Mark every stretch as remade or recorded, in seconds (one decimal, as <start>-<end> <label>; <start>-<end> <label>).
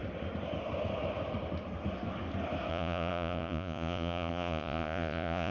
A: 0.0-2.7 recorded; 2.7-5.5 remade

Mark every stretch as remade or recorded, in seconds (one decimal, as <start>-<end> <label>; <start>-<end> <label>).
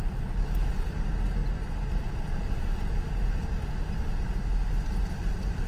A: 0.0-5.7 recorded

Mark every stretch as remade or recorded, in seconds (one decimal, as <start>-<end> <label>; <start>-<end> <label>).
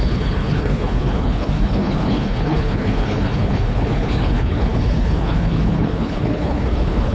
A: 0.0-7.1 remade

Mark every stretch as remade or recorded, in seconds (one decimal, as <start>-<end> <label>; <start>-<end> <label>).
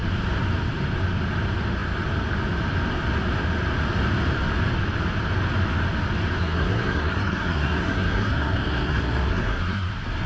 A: 0.0-6.4 recorded; 6.4-9.9 remade; 9.9-10.3 recorded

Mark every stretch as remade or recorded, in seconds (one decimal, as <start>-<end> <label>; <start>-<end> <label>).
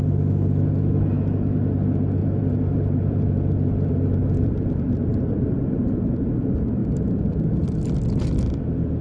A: 0.0-2.2 recorded; 2.2-6.1 remade; 6.1-6.8 recorded; 6.8-8.6 remade; 8.6-9.0 recorded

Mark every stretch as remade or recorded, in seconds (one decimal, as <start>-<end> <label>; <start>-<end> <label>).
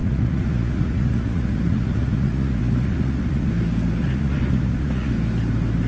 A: 0.0-3.5 remade; 3.5-4.0 recorded; 4.0-5.1 remade; 5.1-5.9 recorded